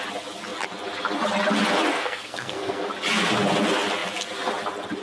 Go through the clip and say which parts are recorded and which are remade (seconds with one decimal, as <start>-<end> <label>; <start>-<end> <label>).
0.0-1.9 recorded; 1.9-2.9 remade; 2.9-5.0 recorded

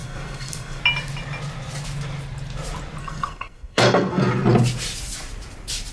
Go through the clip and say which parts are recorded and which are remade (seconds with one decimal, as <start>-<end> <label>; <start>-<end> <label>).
0.0-0.8 remade; 0.8-3.0 recorded; 3.0-4.3 remade; 4.3-5.9 recorded